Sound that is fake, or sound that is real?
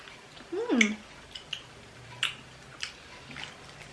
real